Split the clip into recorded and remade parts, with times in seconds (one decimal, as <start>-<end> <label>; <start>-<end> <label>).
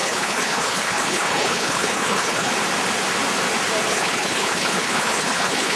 0.0-2.5 remade; 2.5-3.9 recorded; 3.9-5.8 remade